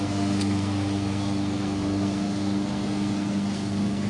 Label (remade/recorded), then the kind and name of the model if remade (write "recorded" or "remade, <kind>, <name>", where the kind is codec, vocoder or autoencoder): remade, codec, SNAC